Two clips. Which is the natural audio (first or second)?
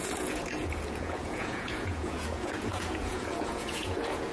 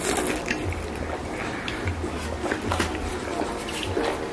second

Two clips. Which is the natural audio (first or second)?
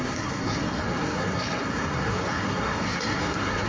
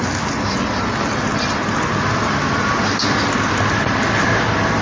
second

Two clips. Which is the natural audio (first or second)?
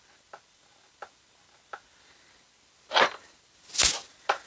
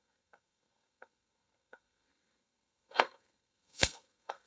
first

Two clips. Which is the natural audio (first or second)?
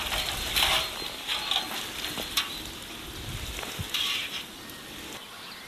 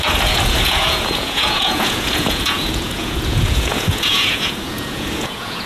first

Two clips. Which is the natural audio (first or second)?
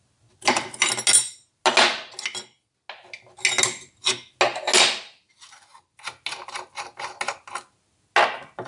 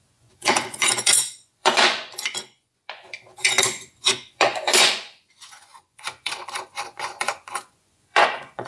first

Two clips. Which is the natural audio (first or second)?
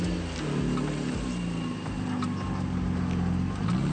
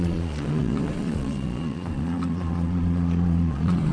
first